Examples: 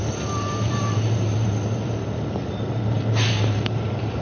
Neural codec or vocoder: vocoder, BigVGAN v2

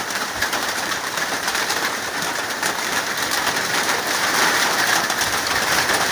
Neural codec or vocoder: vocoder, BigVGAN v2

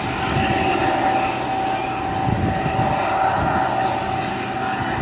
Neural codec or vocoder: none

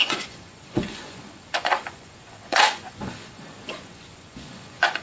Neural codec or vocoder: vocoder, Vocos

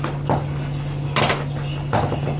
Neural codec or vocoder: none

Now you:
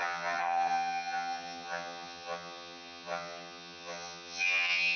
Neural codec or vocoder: vocoder, HiFi-GAN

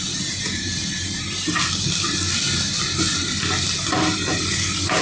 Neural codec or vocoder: none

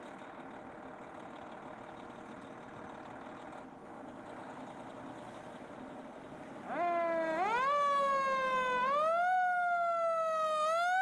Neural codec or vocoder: none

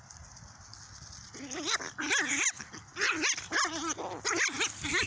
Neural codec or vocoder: none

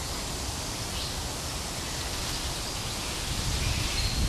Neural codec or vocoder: none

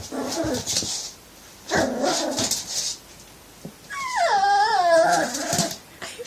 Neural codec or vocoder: none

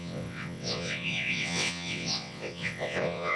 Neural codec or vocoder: vocoder, WaveNeXt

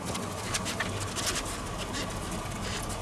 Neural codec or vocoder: none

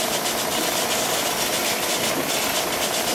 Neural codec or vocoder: none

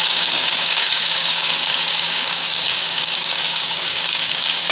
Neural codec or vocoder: codec, DAC